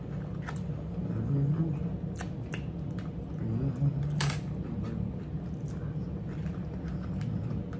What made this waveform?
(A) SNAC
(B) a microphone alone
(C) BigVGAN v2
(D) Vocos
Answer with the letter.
B